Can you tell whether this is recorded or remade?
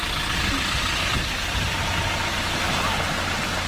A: recorded